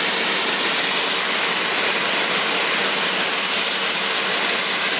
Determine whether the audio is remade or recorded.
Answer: recorded